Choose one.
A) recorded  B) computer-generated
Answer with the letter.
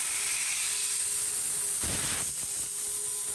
A